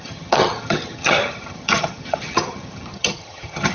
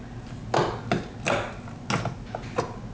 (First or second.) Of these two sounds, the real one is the second